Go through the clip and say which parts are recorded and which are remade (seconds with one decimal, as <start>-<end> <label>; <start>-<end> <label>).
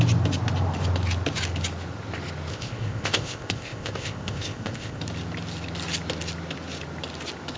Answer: 0.0-2.5 recorded; 2.5-5.0 remade; 5.0-7.6 recorded